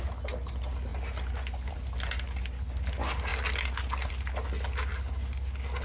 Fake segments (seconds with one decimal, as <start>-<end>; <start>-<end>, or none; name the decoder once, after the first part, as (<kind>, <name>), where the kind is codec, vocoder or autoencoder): none